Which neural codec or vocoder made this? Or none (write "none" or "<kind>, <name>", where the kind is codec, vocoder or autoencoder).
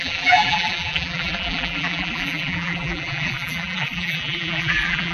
vocoder, BigVGAN v2